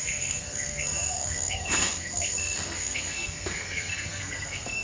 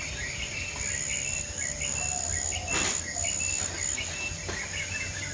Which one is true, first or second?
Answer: second